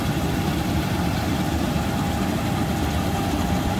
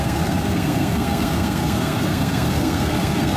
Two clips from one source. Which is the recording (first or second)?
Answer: first